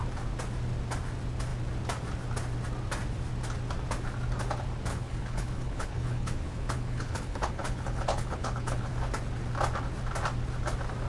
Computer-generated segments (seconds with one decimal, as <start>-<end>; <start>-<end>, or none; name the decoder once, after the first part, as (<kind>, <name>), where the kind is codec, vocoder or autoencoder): 4.9-8.9 (codec, HILCodec)